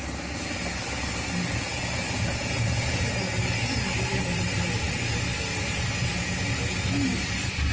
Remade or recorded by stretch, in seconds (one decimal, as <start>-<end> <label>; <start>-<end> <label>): 0.0-7.7 recorded